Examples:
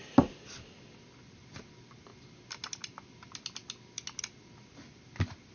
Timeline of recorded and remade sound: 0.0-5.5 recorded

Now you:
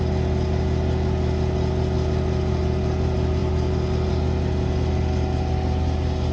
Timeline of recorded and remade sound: 0.0-6.3 recorded

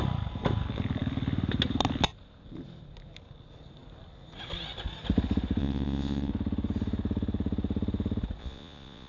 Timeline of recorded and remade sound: 0.0-5.6 recorded; 5.6-6.3 remade; 6.3-8.4 recorded; 8.4-9.1 remade